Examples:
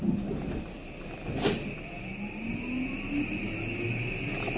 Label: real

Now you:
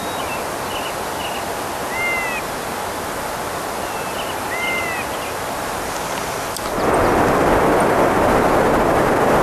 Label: real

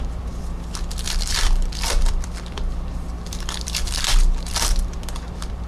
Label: fake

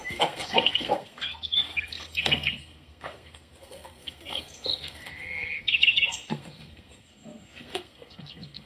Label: fake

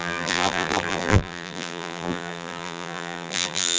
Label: fake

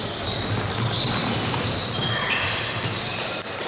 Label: real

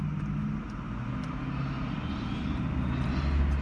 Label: real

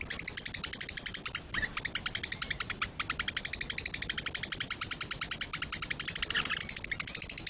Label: real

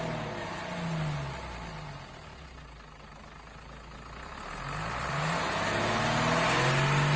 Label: real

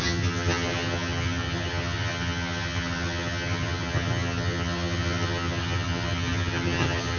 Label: fake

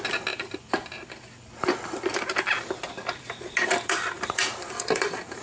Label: fake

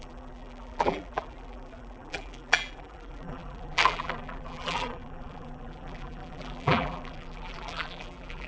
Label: fake